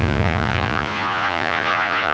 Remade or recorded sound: remade